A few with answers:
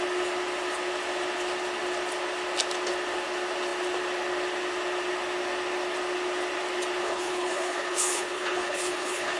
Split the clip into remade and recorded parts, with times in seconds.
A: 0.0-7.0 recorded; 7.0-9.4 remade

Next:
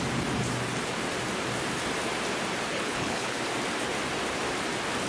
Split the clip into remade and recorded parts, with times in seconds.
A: 0.0-2.7 recorded; 2.7-3.4 remade; 3.4-5.1 recorded

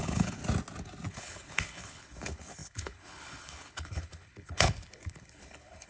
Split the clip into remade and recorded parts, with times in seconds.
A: 0.0-0.4 remade; 0.4-1.1 recorded; 1.1-5.9 remade